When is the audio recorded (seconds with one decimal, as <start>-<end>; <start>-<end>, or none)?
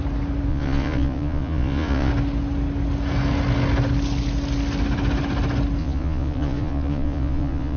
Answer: 0.0-0.5; 2.1-5.8